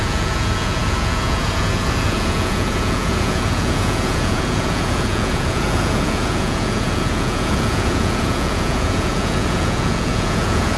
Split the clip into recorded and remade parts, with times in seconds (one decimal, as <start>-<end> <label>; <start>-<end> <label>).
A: 0.0-10.8 remade